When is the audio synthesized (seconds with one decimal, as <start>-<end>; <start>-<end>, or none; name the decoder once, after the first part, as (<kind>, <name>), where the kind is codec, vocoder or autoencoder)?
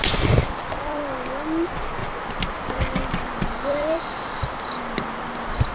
0.0-1.1 (vocoder, BigVGAN v2); 2.0-5.7